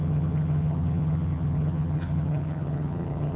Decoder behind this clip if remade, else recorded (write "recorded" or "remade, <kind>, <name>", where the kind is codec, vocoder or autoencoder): remade, vocoder, HiFi-GAN